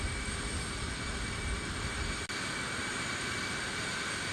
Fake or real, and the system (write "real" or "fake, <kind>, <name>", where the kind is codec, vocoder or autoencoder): real